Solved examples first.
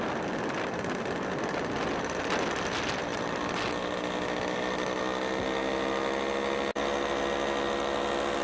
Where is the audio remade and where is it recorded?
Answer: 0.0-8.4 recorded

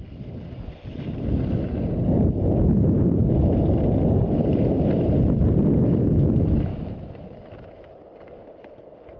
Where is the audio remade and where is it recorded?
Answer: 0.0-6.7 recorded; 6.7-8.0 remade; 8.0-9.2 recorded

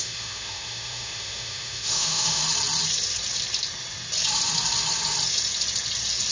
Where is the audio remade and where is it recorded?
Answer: 0.0-2.4 remade; 2.4-6.3 recorded